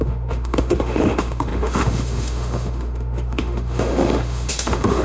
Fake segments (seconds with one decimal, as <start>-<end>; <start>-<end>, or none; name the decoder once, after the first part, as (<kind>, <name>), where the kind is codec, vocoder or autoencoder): 0.0-5.0 (autoencoder, DAC-VAE)